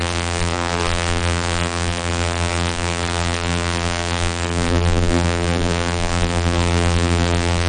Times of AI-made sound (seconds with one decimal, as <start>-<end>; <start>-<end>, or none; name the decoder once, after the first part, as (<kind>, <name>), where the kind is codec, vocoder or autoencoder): 0.0-7.7 (vocoder, BigVGAN v2)